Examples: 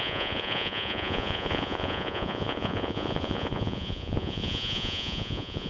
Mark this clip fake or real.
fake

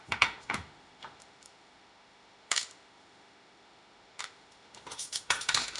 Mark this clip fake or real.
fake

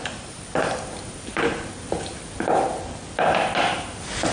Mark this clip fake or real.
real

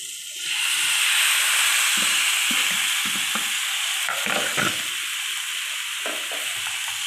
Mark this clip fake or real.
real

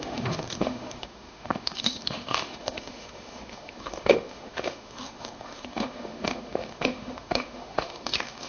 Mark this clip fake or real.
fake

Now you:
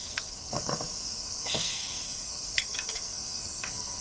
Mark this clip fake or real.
fake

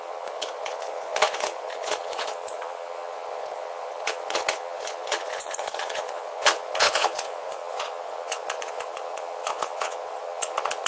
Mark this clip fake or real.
fake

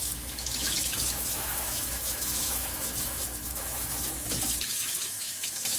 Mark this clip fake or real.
fake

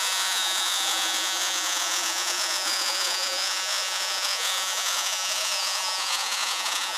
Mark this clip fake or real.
fake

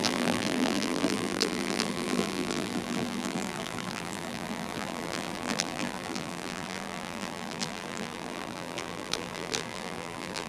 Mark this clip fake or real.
fake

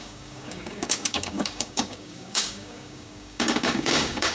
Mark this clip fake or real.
fake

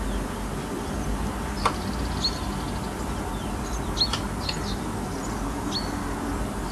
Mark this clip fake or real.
real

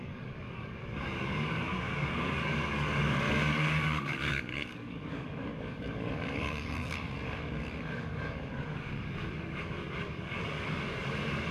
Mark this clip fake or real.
fake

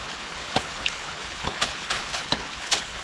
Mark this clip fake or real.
fake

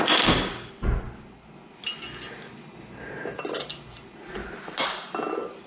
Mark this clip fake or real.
real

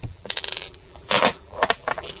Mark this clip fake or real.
fake